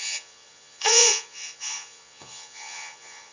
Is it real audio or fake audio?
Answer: fake